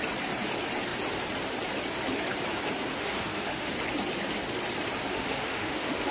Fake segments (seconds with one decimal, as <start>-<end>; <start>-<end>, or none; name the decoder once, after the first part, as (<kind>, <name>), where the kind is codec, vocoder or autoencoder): 2.9-3.7 (autoencoder, DAC-VAE); 5.1-6.1